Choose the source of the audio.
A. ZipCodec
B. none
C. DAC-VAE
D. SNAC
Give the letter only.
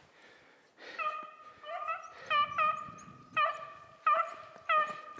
B